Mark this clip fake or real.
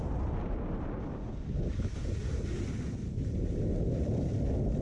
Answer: real